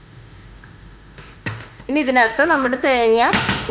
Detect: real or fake fake